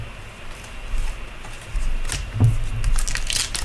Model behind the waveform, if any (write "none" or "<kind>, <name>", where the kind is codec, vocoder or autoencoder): none